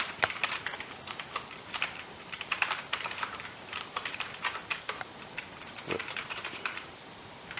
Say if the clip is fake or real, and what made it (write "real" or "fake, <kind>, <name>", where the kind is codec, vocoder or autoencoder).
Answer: fake, vocoder, BigVGAN v2